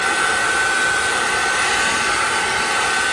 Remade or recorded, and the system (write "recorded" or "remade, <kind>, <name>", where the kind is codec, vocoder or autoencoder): recorded